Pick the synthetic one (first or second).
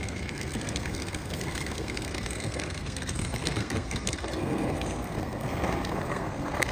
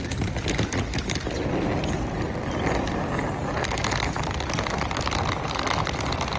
first